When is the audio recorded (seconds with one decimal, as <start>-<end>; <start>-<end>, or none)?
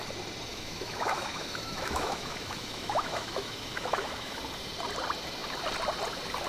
0.0-0.5; 4.4-6.5